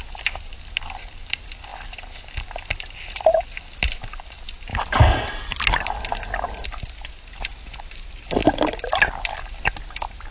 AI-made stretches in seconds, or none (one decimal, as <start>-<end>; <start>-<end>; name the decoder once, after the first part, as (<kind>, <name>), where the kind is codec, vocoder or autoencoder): none